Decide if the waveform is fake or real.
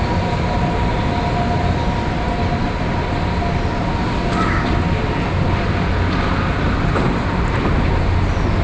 real